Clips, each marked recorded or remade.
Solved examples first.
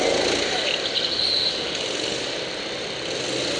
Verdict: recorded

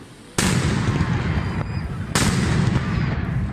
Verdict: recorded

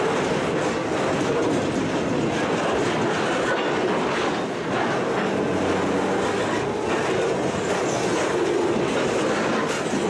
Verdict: recorded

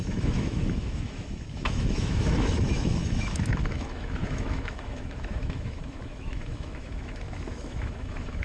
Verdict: remade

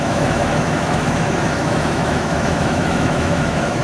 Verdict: remade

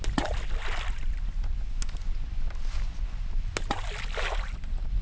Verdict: recorded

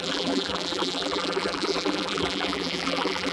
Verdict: remade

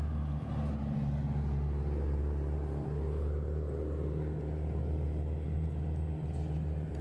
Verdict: recorded